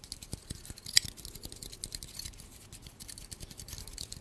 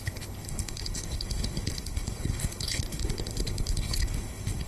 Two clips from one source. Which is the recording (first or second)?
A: first